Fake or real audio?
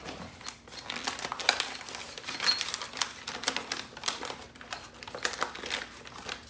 real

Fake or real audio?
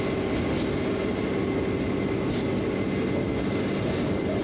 real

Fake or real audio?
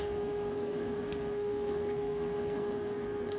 fake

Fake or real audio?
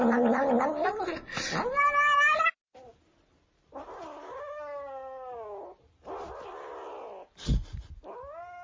real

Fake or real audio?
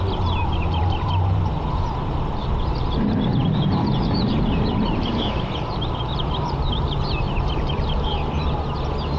fake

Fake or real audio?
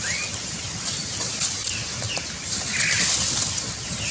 real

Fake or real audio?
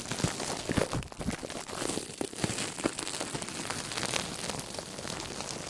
real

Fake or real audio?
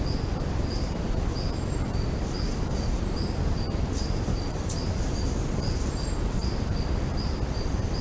real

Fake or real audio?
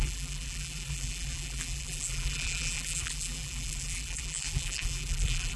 fake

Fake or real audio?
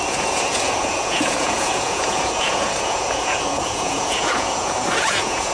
fake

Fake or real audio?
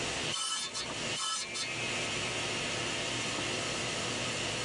real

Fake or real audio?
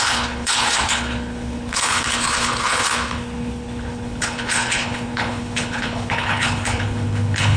fake